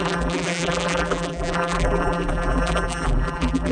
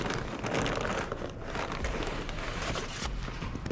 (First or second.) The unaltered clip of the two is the second